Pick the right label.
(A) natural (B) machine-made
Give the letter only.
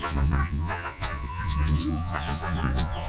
B